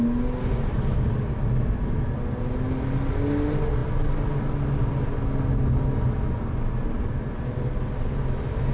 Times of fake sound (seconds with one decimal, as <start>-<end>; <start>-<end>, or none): none